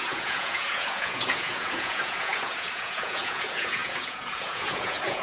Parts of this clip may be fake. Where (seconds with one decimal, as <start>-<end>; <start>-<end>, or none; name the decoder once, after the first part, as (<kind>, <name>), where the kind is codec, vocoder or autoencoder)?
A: 0.0-5.2 (vocoder, Vocos)